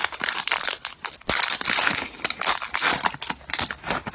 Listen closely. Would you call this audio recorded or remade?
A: recorded